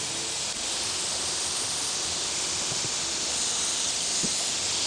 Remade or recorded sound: recorded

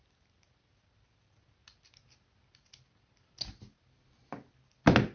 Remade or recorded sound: recorded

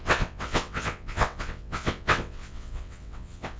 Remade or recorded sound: remade